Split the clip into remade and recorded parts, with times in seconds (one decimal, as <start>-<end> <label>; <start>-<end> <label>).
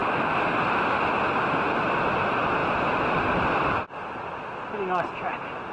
0.0-5.7 recorded